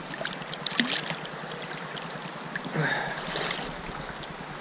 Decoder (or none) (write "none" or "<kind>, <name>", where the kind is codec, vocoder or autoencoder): none